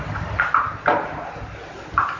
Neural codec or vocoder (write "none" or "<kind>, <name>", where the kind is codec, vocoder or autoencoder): none